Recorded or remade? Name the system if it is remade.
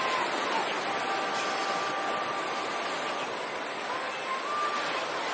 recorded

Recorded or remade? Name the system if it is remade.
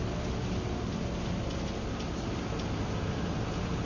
recorded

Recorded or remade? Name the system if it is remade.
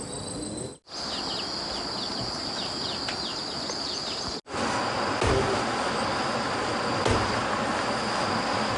recorded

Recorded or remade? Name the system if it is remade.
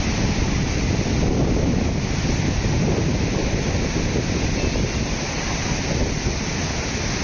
recorded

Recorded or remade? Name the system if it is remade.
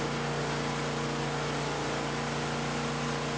recorded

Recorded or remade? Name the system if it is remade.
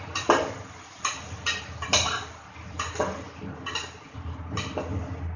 recorded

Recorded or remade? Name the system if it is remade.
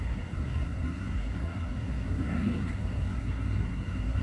remade, codec, SNAC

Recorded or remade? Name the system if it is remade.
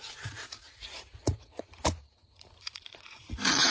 remade, vocoder, Vocos